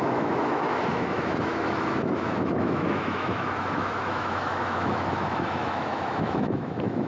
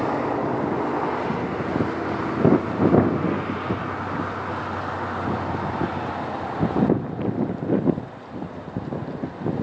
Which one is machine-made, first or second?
first